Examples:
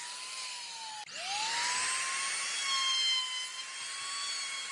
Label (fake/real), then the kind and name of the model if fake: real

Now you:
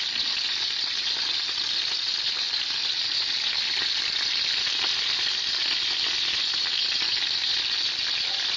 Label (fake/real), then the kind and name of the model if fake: real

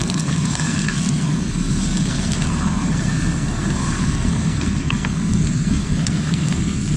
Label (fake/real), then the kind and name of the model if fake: fake, codec, SNAC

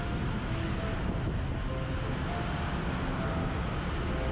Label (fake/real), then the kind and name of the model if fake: real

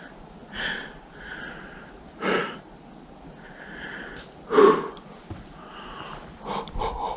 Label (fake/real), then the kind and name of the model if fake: real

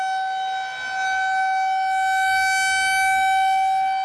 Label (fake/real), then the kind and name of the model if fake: real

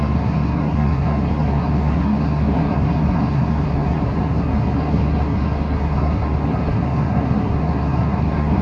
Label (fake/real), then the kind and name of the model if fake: fake, codec, SNAC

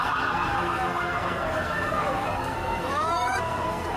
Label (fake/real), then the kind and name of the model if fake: fake, codec, SNAC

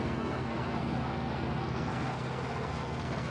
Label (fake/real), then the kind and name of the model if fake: fake, codec, SNAC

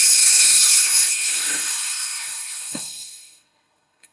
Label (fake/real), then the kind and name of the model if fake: fake, codec, SNAC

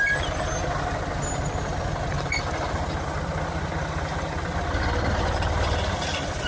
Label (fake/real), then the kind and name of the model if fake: real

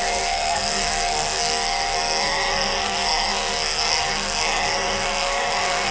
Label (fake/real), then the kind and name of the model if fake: fake, codec, SNAC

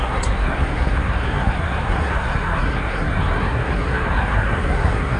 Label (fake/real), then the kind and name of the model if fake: fake, codec, SNAC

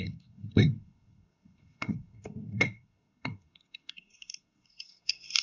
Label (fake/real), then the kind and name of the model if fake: fake, codec, SNAC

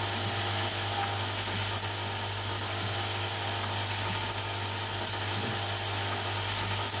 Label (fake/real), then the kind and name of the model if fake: real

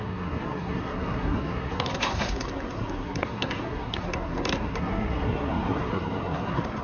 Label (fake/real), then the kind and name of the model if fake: fake, codec, SNAC